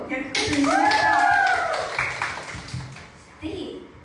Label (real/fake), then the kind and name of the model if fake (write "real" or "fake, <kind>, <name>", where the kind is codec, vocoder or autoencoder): real